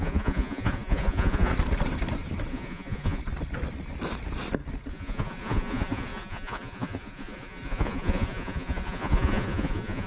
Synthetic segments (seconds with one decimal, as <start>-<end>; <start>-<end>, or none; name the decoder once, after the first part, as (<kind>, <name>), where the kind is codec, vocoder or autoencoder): 0.0-1.5 (vocoder, Vocos); 2.5-3.2; 4.9-10.1